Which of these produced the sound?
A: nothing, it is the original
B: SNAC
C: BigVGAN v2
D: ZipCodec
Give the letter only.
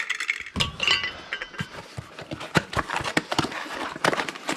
A